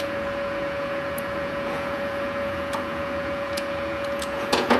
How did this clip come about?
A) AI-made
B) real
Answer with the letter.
A